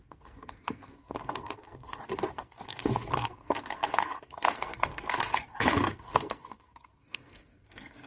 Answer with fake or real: fake